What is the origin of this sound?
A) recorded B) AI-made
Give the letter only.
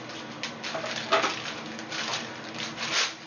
A